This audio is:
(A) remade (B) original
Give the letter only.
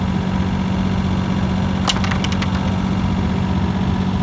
B